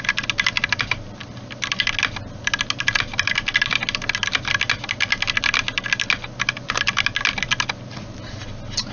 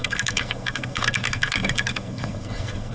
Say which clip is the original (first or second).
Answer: first